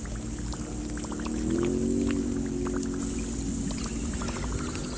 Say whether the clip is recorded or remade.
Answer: recorded